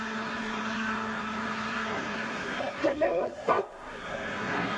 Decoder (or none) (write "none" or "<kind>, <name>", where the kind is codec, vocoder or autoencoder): codec, SNAC